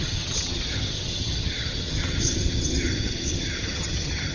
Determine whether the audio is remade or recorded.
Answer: remade